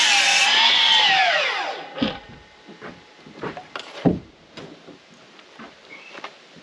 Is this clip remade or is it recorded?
remade